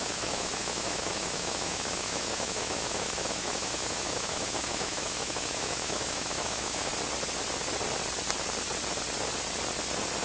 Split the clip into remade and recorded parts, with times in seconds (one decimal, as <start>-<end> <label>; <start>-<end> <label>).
0.0-6.9 remade; 6.9-10.2 recorded